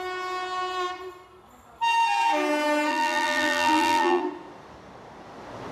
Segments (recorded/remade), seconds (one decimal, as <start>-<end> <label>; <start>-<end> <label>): 0.0-2.9 recorded; 2.9-4.2 remade; 4.2-5.7 recorded